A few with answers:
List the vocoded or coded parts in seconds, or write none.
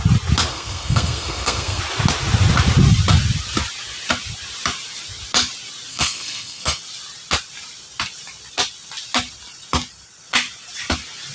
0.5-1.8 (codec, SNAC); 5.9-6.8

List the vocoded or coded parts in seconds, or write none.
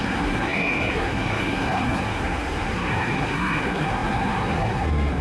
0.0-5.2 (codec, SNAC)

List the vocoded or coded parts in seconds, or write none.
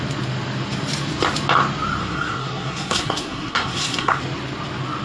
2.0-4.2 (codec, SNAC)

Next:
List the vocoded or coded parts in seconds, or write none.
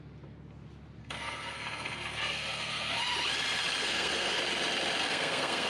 1.0-3.0 (codec, SNAC); 3.8-4.4; 5.0-5.7